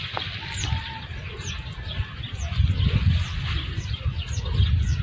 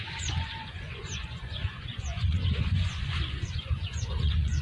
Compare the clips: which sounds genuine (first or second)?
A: first